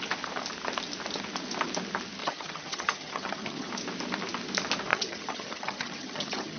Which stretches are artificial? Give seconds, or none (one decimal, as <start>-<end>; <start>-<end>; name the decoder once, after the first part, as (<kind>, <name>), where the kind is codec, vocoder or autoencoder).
2.2-3.7 (vocoder, HiFi-GAN); 4.9-6.6